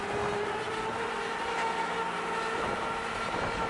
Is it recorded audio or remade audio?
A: recorded